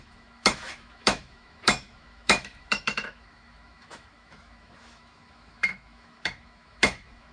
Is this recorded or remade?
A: remade